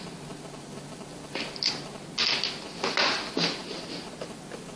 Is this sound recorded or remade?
recorded